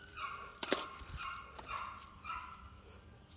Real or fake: fake